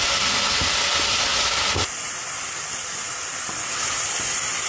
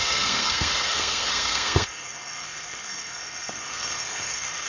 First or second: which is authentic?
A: first